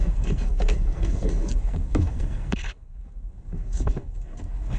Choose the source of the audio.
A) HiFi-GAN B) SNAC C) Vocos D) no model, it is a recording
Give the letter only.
B